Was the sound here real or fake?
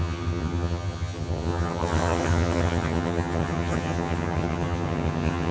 fake